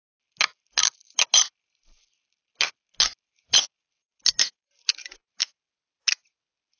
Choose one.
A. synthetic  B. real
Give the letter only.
B